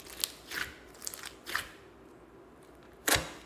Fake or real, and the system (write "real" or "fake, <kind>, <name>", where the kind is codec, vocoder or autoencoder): real